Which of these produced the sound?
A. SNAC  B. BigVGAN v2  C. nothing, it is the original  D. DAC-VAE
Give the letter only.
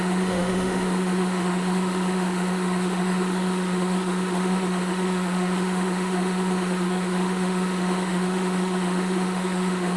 D